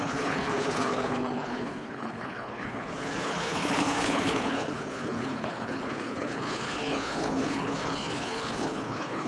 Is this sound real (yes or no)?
no